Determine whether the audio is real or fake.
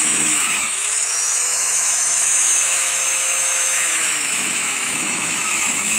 fake